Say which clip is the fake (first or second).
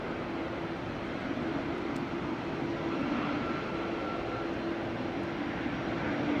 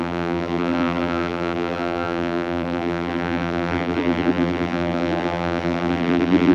second